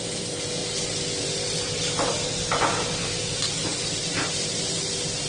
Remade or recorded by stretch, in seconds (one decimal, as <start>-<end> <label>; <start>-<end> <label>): 0.0-5.3 recorded